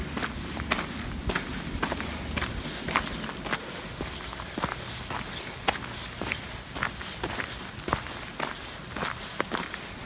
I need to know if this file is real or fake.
real